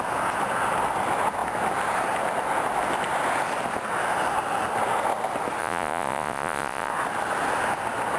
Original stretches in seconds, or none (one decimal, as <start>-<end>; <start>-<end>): 0.0-5.6; 6.9-8.2